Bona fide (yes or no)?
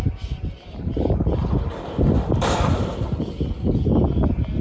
yes